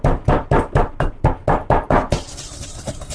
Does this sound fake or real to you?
real